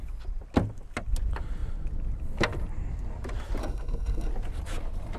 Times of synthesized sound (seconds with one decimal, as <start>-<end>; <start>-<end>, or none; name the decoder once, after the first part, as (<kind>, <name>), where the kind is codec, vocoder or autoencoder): 3.6-4.3 (codec, SNAC)